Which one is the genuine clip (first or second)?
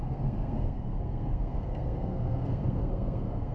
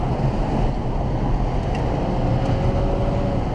second